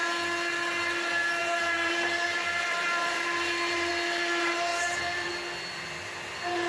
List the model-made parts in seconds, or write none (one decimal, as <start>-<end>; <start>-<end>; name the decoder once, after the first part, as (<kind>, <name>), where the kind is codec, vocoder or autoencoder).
1.4-3.9 (vocoder, BigVGAN v2); 4.7-5.3

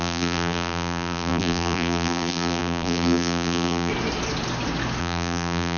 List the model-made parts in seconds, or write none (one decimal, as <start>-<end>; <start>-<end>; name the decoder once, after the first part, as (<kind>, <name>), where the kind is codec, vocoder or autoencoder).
0.0-3.9 (vocoder, BigVGAN v2); 5.0-5.8

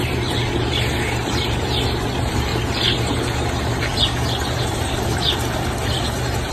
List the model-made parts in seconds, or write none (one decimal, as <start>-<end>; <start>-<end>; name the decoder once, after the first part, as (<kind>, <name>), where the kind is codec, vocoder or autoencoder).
0.0-2.5 (vocoder, BigVGAN v2); 3.3-6.5

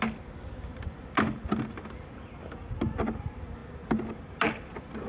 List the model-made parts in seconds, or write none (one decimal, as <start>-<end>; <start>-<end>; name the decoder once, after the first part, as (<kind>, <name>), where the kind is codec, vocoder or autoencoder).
none

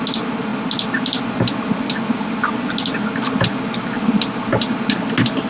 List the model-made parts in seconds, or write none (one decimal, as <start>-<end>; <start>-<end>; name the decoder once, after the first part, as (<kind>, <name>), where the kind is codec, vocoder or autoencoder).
none

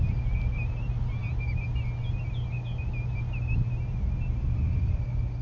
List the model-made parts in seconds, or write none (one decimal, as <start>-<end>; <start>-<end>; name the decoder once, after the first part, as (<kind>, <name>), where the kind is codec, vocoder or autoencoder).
none

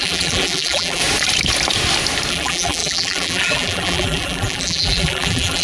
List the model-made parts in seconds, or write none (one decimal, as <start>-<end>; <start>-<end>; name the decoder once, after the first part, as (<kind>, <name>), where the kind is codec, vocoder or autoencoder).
0.0-1.0 (vocoder, BigVGAN v2); 2.3-5.6

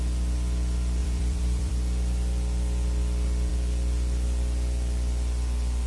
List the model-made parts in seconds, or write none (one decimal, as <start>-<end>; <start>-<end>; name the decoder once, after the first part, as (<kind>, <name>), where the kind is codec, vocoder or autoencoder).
1.0-1.7 (vocoder, BigVGAN v2)